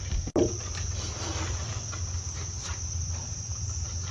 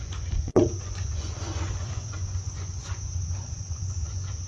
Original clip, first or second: first